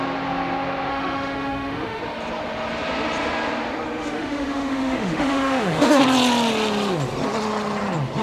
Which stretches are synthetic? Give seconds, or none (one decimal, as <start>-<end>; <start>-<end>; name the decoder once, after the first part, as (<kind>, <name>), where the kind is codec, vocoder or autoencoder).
0.9-2.0 (autoencoder, DAC-VAE); 4.0-6.0